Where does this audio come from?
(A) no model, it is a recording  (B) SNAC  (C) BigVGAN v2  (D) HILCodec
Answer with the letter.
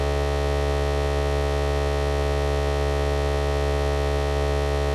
A